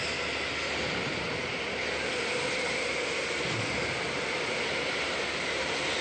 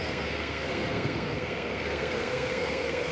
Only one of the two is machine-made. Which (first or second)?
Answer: second